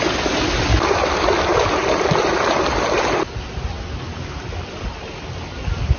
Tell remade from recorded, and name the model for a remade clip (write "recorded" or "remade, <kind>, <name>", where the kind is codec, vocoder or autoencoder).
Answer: recorded